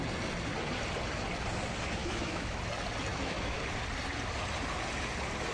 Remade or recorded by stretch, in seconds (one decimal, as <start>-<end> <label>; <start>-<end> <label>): 0.0-2.0 recorded; 2.0-2.6 remade; 2.6-3.1 recorded; 3.1-3.6 remade; 3.6-5.5 recorded